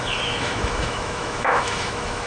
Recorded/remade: remade